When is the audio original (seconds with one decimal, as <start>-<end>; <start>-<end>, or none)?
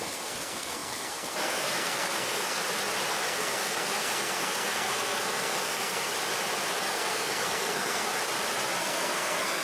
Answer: 2.6-3.1; 6.1-6.8; 8.1-8.8